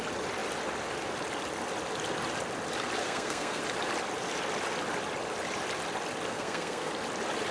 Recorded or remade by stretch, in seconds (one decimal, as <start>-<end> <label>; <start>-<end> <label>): 0.0-3.0 recorded; 3.0-3.6 remade; 3.6-6.3 recorded; 6.3-6.9 remade; 6.9-7.5 recorded